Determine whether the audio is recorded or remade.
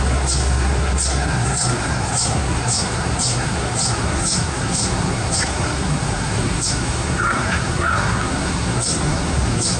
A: remade